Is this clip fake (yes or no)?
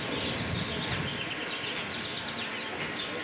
no